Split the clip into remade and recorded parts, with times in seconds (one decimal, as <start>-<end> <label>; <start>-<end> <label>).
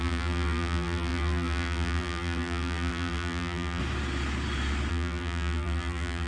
0.0-3.8 remade; 3.8-4.9 recorded; 4.9-6.3 remade